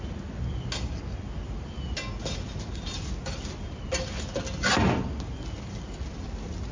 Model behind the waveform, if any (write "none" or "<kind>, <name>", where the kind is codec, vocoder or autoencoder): none